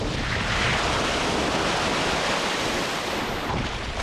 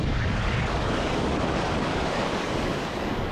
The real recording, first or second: first